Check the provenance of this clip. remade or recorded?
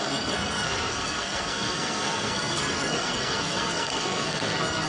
remade